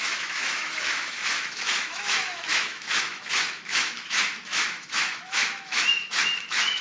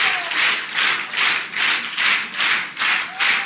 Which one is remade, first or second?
first